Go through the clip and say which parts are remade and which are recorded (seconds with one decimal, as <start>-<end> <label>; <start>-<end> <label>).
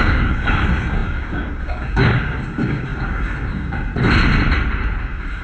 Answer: 0.0-3.9 remade; 3.9-5.0 recorded; 5.0-5.4 remade